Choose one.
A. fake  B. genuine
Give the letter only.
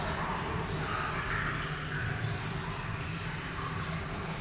B